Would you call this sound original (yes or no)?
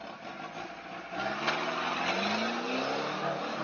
yes